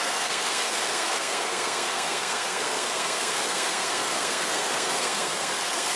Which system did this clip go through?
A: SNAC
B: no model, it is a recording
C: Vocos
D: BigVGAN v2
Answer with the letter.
A